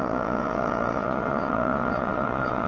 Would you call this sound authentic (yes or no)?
no